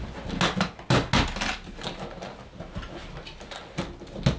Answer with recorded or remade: recorded